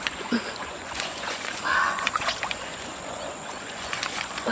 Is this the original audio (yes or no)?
no